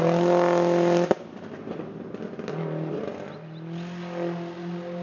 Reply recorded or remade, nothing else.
recorded